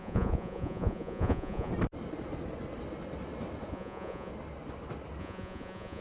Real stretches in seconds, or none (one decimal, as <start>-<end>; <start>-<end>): 1.7-3.7; 4.3-5.2